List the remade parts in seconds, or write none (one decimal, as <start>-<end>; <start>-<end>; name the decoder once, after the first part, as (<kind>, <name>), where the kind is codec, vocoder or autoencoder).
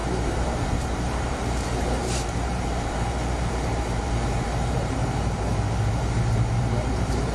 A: 0.0-5.0 (vocoder, BigVGAN v2); 6.5-7.3